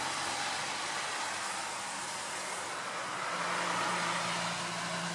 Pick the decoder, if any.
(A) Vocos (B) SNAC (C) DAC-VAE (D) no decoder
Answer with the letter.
D